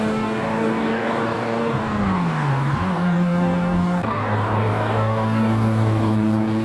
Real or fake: fake